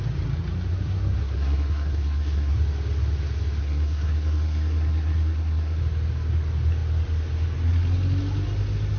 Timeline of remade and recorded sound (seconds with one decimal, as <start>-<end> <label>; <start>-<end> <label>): 0.0-0.7 recorded; 0.7-2.5 remade; 2.5-3.6 recorded; 3.6-5.8 remade; 5.8-9.0 recorded